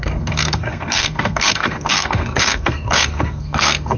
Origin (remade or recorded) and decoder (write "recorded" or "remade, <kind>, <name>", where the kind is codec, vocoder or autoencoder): remade, codec, SNAC